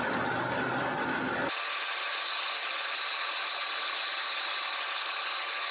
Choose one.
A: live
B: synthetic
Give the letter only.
A